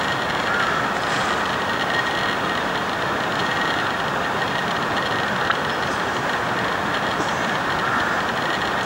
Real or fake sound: real